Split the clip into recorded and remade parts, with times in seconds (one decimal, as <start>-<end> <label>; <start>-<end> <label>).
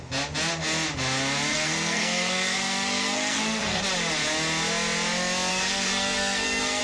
0.0-1.5 recorded; 1.5-3.8 remade; 3.8-5.5 recorded; 5.5-6.8 remade